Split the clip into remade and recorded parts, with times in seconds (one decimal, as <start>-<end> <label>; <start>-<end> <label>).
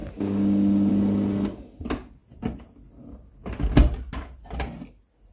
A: 0.0-5.3 recorded